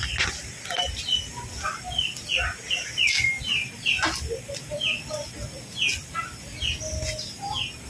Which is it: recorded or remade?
recorded